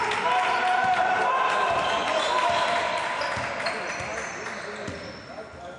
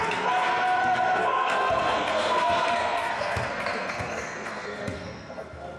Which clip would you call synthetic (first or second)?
second